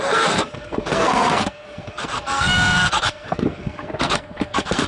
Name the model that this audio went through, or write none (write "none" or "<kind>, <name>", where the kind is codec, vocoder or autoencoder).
codec, SNAC